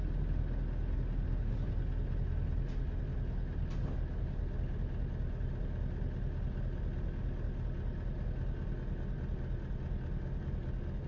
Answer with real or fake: real